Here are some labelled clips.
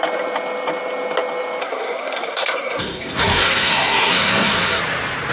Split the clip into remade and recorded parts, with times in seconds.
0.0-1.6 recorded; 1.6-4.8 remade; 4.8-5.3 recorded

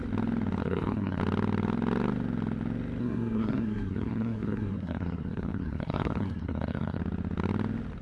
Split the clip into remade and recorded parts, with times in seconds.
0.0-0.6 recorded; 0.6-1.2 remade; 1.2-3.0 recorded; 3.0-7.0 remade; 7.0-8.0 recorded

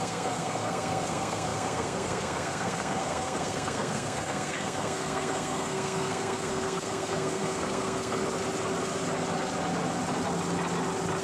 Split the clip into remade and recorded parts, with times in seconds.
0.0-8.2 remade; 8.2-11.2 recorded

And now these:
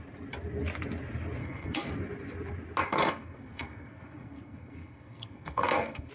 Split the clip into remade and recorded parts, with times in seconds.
0.0-1.4 recorded; 1.4-1.9 remade; 1.9-2.8 recorded; 2.8-6.1 remade

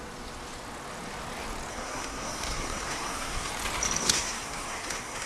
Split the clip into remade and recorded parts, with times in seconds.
0.0-1.7 recorded; 1.7-3.5 remade; 3.5-4.0 recorded; 4.0-5.3 remade